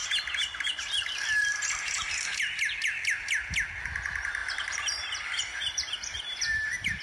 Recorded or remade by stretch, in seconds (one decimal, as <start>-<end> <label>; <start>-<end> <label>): 0.0-4.4 recorded; 4.4-6.2 remade; 6.2-7.0 recorded